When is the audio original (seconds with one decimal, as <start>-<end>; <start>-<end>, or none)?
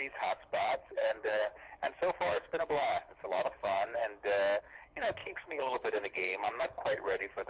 1.5-2.2; 4.0-4.6